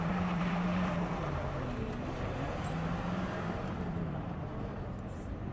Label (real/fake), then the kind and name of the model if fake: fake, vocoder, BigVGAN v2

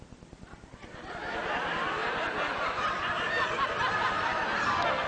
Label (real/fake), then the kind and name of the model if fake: real